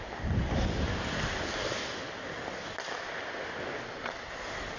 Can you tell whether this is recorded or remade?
recorded